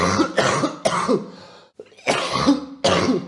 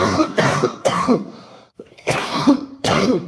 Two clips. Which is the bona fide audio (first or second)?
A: first